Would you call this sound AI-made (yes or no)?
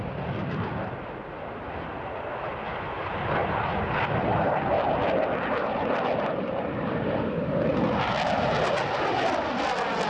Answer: no